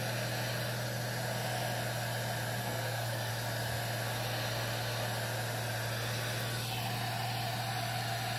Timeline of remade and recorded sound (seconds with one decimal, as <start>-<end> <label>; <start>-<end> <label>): 0.0-2.6 recorded; 2.6-3.3 remade; 3.3-8.4 recorded